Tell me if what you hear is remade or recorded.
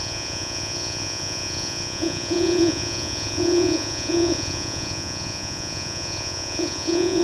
remade